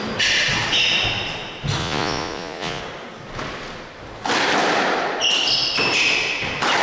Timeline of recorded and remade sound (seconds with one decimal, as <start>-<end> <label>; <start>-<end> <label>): 0.0-1.8 recorded; 1.8-2.8 remade; 2.8-6.8 recorded